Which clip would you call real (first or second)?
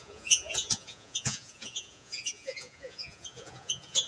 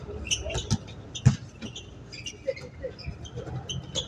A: second